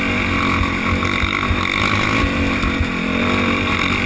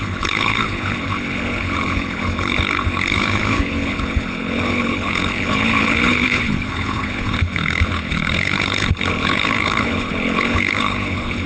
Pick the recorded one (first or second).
first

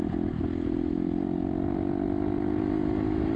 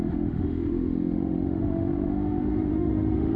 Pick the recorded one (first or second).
first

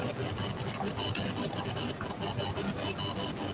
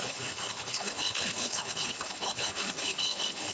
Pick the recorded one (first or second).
first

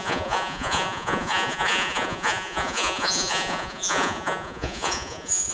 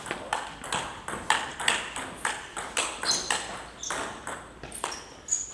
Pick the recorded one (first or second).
second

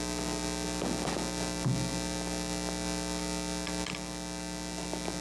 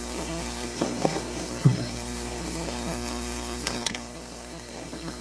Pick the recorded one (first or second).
first